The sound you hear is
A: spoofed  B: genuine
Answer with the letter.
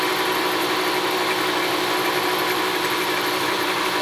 A